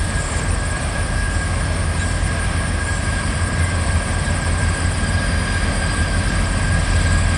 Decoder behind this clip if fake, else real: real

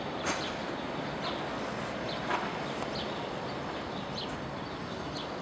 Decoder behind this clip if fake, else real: real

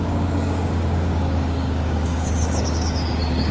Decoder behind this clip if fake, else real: fake, codec, DAC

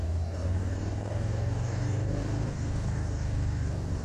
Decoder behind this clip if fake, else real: fake, codec, DAC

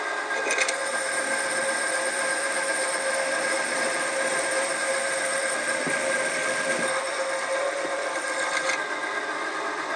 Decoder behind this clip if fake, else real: real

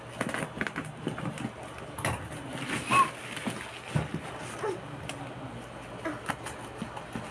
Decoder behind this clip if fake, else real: real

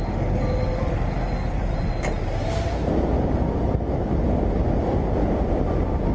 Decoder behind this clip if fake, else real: real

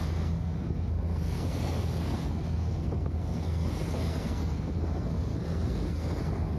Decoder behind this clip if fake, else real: fake, codec, SNAC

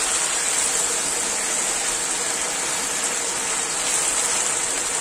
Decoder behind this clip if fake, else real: real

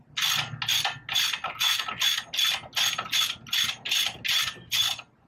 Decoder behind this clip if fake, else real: real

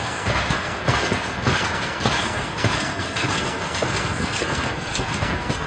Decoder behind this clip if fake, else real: fake, codec, SNAC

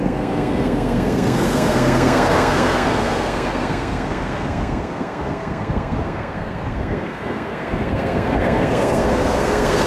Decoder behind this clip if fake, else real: fake, codec, SNAC